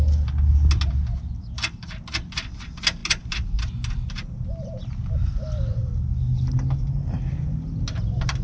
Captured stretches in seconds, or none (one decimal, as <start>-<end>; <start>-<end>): 0.0-8.4